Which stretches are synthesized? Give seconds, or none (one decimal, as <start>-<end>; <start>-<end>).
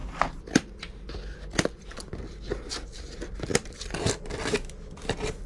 2.7-5.5